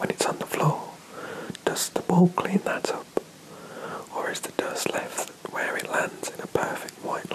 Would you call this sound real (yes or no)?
no